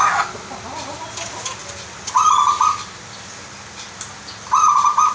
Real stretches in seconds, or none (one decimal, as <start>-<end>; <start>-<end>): 0.0-5.1